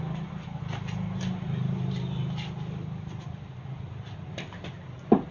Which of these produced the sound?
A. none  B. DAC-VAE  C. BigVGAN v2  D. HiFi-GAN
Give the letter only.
A